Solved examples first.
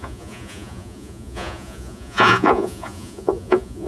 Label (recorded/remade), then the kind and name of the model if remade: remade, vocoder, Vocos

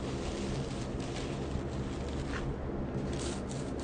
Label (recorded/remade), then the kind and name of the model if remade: recorded